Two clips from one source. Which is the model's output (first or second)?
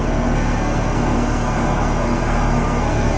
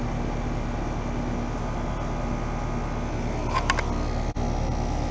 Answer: first